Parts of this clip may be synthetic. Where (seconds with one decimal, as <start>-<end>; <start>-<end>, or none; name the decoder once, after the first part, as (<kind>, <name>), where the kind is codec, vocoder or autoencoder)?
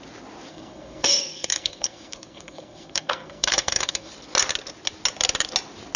0.5-4.1 (codec, SNAC)